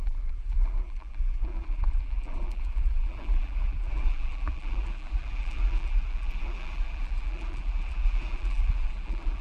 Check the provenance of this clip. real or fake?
fake